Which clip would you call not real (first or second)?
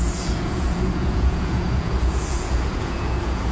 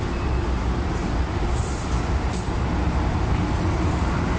first